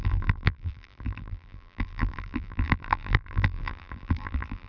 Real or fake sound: fake